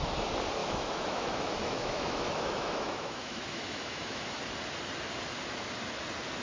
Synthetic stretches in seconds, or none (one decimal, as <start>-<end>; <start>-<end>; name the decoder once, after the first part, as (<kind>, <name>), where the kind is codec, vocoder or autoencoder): 0.6-4.4 (autoencoder, DAC-VAE)